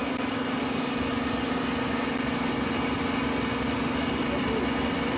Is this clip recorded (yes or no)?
yes